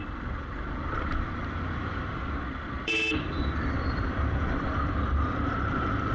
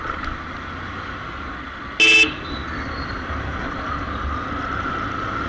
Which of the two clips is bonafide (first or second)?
second